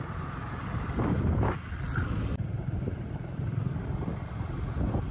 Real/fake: real